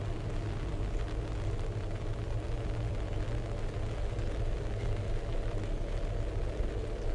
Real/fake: real